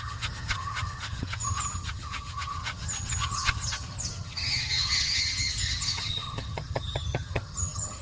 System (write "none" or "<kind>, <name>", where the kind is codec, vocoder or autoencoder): vocoder, HiFi-GAN